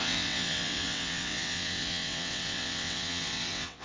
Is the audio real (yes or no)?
no